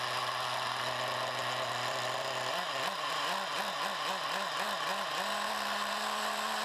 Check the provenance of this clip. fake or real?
real